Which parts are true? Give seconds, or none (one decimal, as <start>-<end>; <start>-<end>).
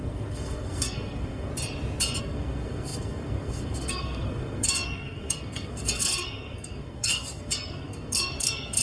1.5-2.2